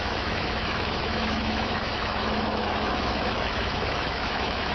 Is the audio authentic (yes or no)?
no